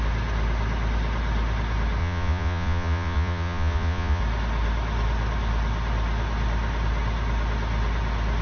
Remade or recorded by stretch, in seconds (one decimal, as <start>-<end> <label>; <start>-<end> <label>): 0.0-2.0 recorded; 2.0-4.2 remade; 4.2-8.4 recorded